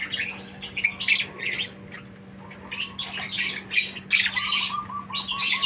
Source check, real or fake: real